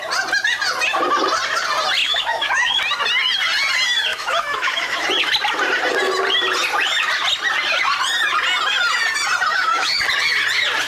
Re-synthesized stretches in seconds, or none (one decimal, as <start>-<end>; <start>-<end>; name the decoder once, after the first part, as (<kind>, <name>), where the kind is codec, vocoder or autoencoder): 2.0-2.8 (autoencoder, DAC-VAE); 4.1-5.1; 9.5-10.0